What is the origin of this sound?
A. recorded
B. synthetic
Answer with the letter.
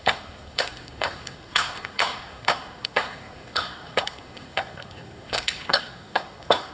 B